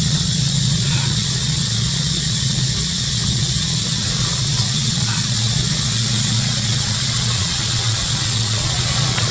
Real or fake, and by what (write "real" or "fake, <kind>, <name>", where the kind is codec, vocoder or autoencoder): fake, vocoder, Vocos